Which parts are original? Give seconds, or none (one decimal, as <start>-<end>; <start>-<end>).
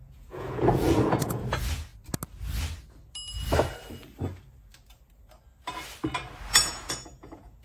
1.9-6.5